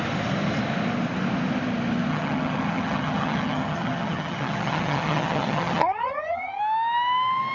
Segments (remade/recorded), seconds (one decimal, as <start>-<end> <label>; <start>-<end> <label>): 0.0-2.1 recorded; 2.1-6.6 remade; 6.6-7.5 recorded